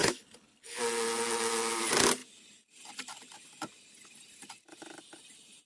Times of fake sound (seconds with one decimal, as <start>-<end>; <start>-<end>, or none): 0.0-0.8